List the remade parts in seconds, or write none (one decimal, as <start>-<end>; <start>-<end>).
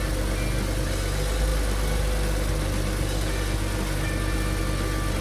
none